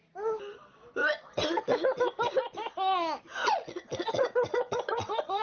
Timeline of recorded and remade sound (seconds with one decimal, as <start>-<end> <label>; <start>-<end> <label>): 0.0-1.0 recorded; 1.0-2.0 remade; 2.0-3.4 recorded; 3.4-5.4 remade